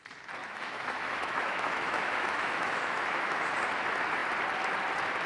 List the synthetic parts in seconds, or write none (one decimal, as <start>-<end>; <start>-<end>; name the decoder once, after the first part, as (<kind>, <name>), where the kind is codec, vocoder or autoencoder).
0.4-3.5 (autoencoder, DAC-VAE)